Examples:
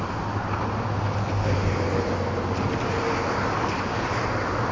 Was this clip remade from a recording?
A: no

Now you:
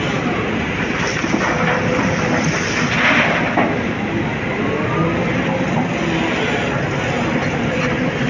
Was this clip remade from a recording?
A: no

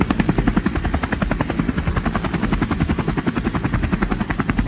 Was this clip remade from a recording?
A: no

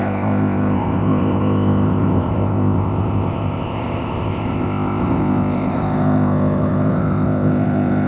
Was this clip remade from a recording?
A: yes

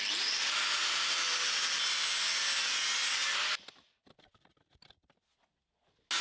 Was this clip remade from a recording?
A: no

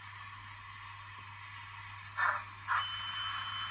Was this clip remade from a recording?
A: no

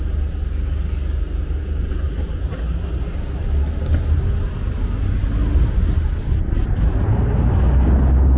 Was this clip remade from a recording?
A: no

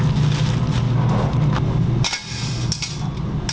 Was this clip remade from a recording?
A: no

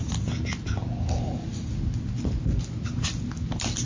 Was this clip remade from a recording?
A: no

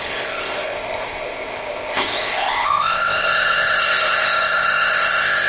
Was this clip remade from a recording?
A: yes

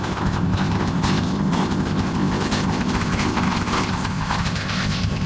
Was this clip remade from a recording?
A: yes